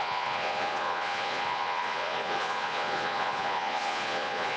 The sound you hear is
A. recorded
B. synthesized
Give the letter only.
B